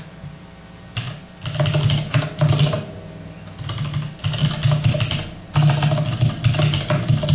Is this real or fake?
real